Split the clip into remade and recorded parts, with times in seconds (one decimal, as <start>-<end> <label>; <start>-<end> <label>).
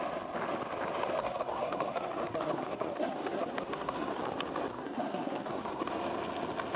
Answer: 0.0-1.2 recorded; 1.2-4.2 remade; 4.2-4.7 recorded; 4.7-5.9 remade; 5.9-6.8 recorded